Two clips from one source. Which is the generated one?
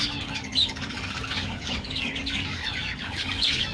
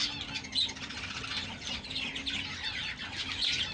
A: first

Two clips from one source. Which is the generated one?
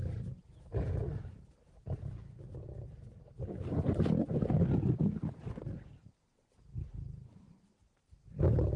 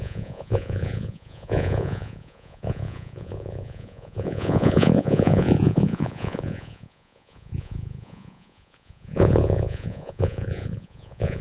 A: second